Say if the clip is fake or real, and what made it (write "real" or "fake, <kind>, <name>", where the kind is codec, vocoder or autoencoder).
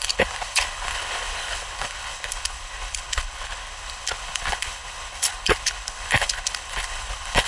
fake, codec, HILCodec